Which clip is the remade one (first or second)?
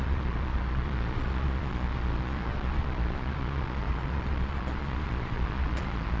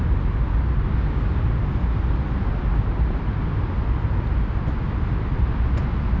first